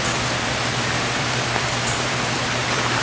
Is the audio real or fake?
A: fake